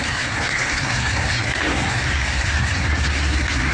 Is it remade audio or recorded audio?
remade